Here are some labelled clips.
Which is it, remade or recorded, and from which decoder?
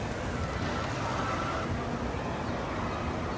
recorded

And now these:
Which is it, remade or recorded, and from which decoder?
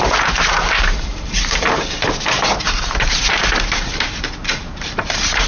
remade, vocoder, BigVGAN v2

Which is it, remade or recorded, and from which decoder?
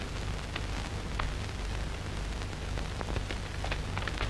recorded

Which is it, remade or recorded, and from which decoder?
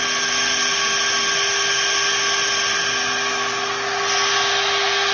recorded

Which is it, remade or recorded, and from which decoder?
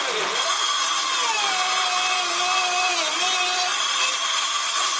recorded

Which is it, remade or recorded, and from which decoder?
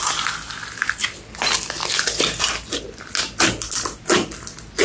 recorded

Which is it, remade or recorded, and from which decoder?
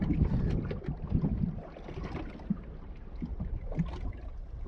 recorded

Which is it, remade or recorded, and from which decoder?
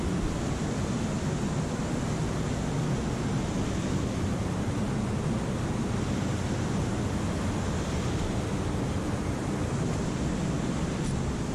recorded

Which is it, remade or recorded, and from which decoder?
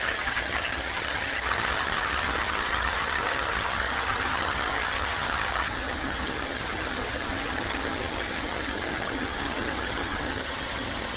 remade, vocoder, HiFi-GAN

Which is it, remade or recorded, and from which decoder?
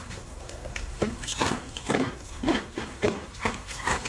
remade, codec, SNAC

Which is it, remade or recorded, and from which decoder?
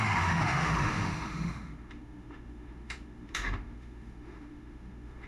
remade, autoencoder, DAC-VAE